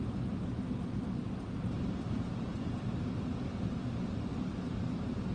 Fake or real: real